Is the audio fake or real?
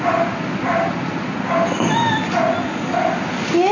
real